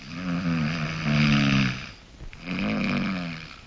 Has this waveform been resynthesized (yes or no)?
no